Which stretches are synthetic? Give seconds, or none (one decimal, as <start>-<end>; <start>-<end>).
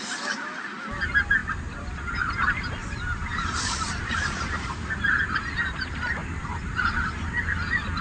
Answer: 1.4-2.0; 2.8-5.2; 6.2-7.3